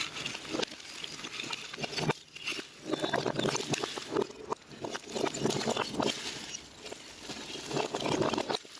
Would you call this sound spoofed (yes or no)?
no